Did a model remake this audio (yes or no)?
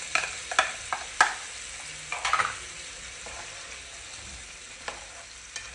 no